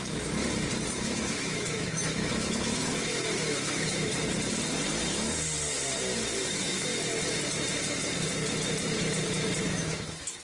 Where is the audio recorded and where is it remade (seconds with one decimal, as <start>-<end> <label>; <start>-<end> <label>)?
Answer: 0.0-0.4 remade; 0.4-1.0 recorded; 1.0-4.1 remade; 4.1-6.4 recorded; 6.4-6.9 remade; 6.9-9.6 recorded; 9.6-10.4 remade